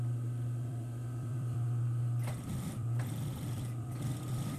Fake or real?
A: fake